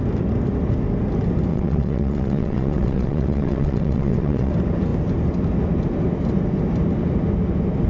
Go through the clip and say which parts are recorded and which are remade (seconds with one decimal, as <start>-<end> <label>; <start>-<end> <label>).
0.0-1.5 recorded; 1.5-4.5 remade; 4.5-7.9 recorded